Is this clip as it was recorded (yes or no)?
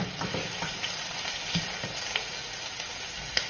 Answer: yes